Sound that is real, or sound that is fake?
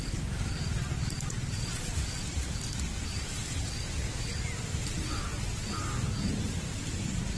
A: real